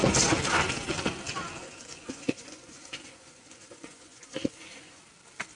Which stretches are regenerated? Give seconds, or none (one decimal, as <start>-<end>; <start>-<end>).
1.6-5.0